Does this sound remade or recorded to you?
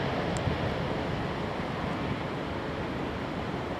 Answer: recorded